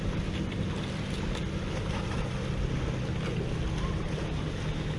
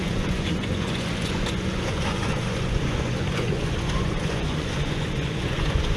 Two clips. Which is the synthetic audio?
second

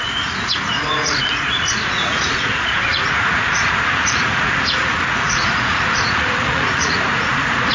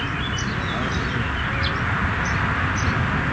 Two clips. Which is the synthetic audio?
first